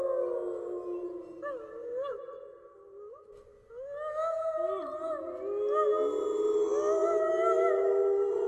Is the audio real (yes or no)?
yes